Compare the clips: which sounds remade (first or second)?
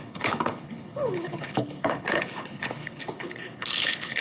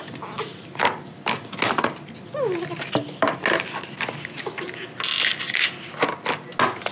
first